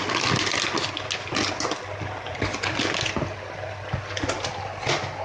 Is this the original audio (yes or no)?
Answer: yes